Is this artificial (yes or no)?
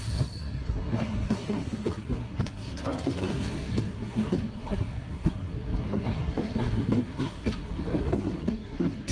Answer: yes